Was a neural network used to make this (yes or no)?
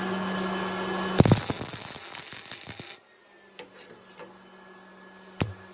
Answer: no